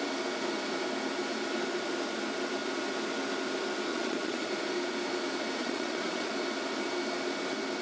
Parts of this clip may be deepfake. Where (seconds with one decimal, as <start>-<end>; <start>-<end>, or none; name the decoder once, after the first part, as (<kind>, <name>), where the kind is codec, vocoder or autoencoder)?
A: 3.9-4.5 (vocoder, Vocos); 5.6-6.3

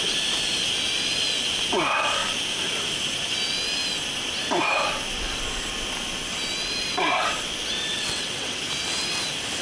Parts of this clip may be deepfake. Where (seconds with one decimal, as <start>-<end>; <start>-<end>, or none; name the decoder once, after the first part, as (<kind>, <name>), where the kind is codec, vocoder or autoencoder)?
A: 7.9-8.6 (vocoder, WaveNeXt)

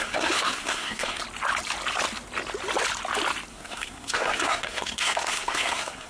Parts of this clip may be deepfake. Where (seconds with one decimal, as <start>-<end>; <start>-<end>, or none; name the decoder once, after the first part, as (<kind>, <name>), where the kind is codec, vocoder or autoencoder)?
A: 0.0-1.2 (codec, SNAC); 3.5-6.1

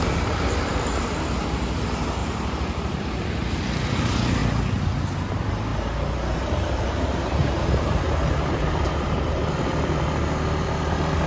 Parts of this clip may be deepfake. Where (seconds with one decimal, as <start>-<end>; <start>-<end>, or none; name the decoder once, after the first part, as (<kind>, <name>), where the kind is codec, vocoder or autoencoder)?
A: 2.2-3.0 (vocoder, BigVGAN v2); 5.7-9.6

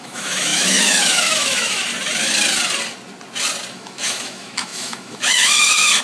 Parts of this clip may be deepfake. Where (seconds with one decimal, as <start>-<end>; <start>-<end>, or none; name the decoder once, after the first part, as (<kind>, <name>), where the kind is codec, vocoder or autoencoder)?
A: 0.0-1.8 (autoencoder, DAC-VAE); 3.7-6.0

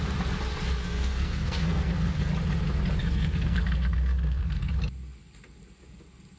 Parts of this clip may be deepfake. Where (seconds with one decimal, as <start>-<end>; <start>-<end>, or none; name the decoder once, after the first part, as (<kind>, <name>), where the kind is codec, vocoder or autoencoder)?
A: 0.8-2.3 (codec, SNAC); 3.0-4.7